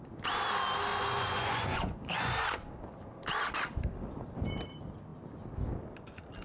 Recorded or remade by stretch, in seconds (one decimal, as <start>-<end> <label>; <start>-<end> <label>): 0.0-0.9 recorded; 0.9-2.3 remade; 2.3-6.4 recorded